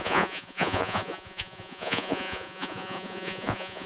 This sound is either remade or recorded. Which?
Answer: remade